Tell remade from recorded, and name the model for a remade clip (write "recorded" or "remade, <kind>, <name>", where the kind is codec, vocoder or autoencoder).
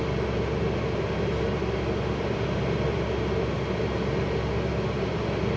recorded